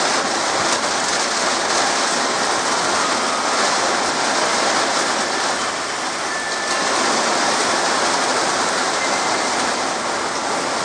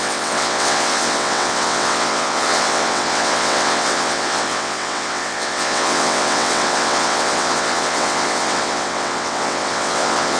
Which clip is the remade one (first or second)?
second